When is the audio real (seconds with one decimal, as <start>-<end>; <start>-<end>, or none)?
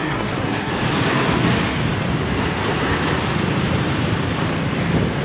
0.7-5.2